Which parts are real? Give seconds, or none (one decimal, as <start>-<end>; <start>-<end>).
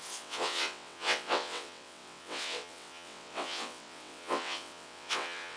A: none